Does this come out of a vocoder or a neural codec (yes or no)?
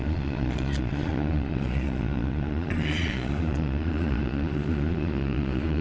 yes